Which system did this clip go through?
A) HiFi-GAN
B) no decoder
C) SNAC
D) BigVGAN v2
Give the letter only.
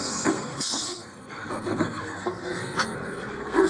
C